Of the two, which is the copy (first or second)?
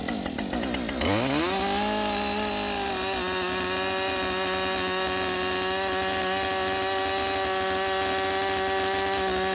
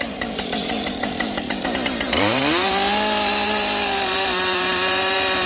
second